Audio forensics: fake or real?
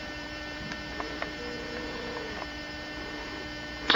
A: fake